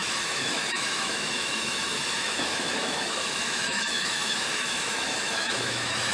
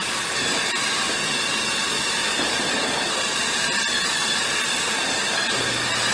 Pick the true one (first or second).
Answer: second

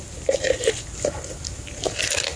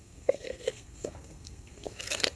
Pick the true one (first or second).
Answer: first